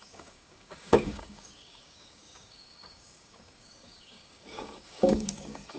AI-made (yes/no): yes